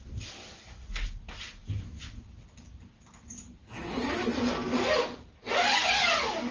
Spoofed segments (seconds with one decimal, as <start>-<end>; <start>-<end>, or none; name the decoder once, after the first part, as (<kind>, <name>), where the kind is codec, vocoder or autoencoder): none